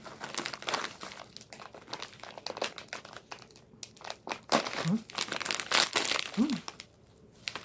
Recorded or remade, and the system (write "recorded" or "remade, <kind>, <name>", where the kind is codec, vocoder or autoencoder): recorded